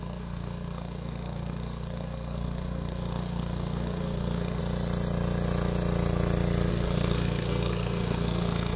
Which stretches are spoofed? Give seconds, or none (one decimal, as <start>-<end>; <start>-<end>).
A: 0.0-4.6; 6.7-8.8